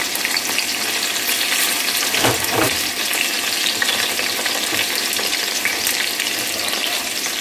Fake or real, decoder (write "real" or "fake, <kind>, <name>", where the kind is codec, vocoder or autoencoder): fake, vocoder, BigVGAN v2